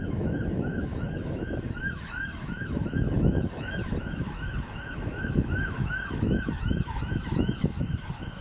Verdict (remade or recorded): remade